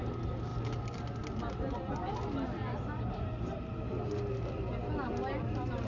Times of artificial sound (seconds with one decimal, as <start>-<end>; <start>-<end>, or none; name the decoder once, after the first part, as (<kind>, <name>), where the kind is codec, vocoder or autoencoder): none